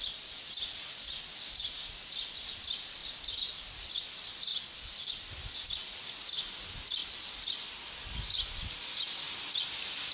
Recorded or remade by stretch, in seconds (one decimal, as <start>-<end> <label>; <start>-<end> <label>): 0.0-10.1 recorded